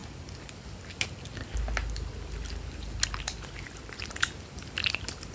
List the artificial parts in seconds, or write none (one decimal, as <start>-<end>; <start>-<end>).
none